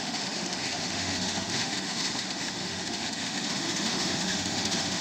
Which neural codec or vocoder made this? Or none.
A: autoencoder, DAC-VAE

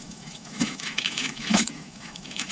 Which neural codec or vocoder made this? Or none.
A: autoencoder, DAC-VAE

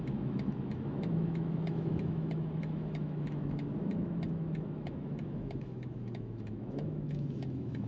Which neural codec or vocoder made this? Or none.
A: autoencoder, DAC-VAE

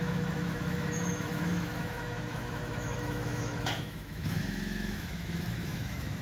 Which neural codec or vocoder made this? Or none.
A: autoencoder, DAC-VAE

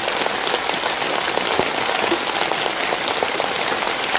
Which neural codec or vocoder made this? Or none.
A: none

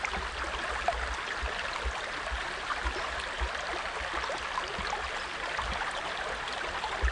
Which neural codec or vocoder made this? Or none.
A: none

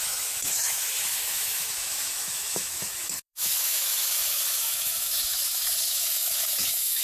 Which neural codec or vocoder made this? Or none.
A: autoencoder, DAC-VAE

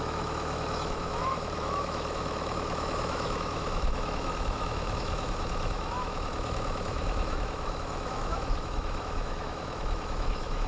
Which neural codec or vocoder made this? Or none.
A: autoencoder, DAC-VAE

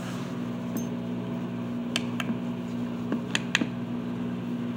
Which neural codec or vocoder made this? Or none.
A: none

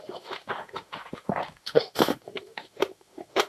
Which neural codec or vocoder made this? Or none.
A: autoencoder, DAC-VAE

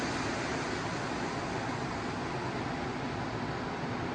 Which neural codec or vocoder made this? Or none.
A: none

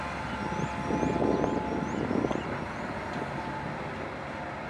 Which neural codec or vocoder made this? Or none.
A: none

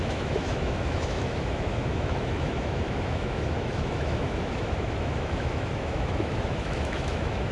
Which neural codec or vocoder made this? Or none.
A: autoencoder, DAC-VAE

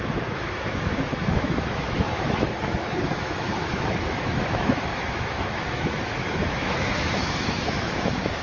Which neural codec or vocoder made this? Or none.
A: autoencoder, DAC-VAE